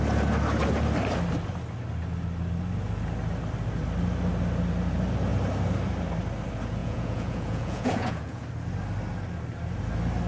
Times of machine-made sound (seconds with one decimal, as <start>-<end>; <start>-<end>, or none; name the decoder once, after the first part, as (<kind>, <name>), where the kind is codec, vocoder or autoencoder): 6.8-8.4 (vocoder, Vocos)